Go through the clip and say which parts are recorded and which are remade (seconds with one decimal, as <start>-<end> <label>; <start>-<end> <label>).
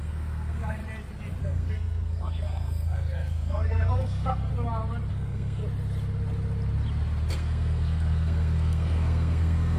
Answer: 0.0-0.8 remade; 0.8-1.4 recorded; 1.4-4.5 remade; 4.5-5.1 recorded; 5.1-5.6 remade; 5.6-7.3 recorded; 7.3-9.8 remade